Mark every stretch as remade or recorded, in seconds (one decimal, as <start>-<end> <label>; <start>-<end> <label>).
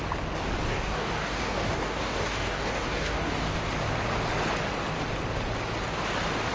0.0-0.7 recorded; 0.7-3.6 remade; 3.6-6.5 recorded